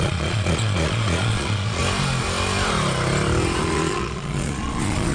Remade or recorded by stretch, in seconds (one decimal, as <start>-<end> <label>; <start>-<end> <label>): 0.0-1.8 remade; 1.8-3.6 recorded; 3.6-5.1 remade